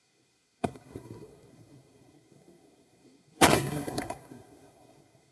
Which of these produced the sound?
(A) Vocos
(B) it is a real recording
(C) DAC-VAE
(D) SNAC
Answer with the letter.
D